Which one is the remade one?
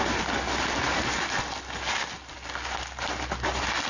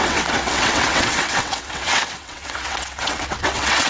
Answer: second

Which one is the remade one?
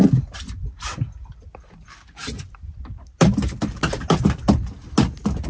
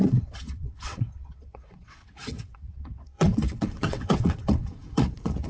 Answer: second